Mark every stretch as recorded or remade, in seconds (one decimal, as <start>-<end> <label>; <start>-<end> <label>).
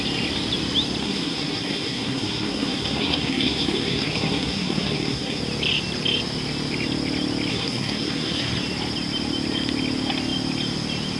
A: 0.0-1.0 recorded; 1.0-5.4 remade; 5.4-7.5 recorded; 7.5-8.5 remade; 8.5-11.2 recorded